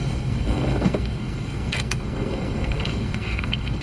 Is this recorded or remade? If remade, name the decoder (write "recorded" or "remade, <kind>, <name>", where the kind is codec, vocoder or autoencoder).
remade, codec, SNAC